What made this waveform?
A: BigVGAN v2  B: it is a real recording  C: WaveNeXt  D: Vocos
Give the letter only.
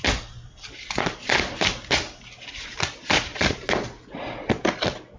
B